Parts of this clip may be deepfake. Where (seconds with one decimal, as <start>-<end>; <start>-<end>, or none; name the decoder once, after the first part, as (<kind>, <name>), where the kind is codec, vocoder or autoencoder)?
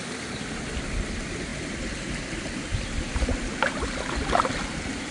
none